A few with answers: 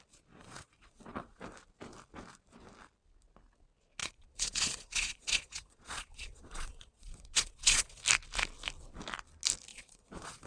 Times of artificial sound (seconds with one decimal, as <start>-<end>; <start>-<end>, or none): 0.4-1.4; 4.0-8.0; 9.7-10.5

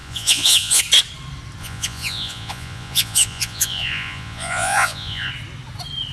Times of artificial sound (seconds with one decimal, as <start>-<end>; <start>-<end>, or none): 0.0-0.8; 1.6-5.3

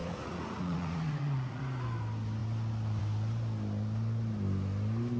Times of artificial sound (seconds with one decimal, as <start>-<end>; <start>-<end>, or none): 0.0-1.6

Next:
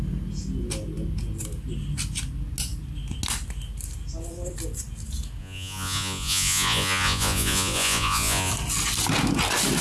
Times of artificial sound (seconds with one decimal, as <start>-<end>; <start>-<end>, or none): 5.4-8.5

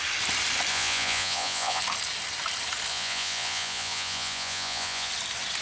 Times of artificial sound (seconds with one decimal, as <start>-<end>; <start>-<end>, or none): 0.7-1.8; 2.9-5.1

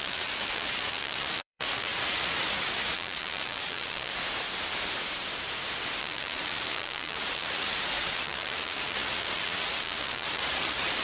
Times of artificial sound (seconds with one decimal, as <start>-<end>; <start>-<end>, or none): 0.0-4.1; 6.0-11.0

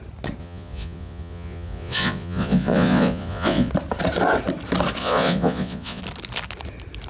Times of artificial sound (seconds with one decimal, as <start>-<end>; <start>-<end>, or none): 0.4-3.7; 5.0-6.0

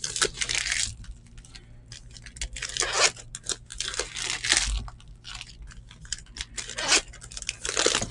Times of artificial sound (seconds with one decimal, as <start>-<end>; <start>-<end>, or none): none